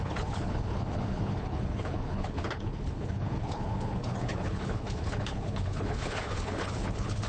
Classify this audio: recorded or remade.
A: remade